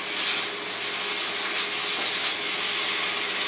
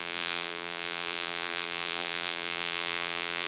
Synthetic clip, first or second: second